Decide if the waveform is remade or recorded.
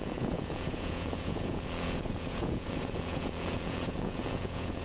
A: remade